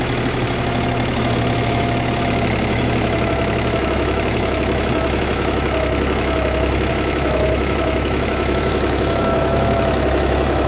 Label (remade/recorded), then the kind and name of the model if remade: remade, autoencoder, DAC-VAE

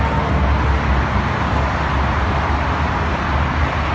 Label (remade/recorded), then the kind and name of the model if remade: recorded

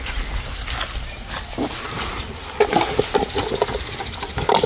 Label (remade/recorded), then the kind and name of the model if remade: recorded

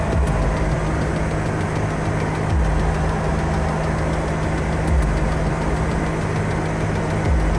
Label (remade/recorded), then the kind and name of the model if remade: recorded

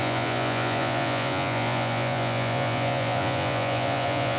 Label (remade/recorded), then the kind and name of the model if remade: remade, vocoder, Vocos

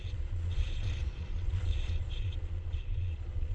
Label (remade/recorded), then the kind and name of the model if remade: remade, vocoder, Vocos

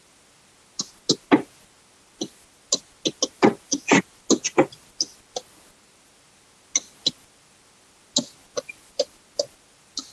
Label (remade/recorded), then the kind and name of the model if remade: recorded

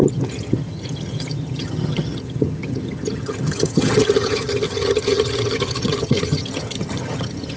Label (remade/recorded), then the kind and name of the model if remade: remade, vocoder, HiFi-GAN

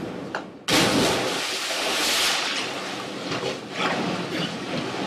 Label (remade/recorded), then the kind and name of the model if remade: recorded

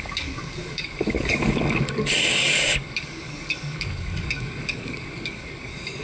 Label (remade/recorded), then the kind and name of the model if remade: remade, codec, DAC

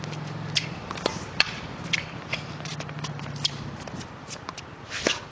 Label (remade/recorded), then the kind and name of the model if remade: recorded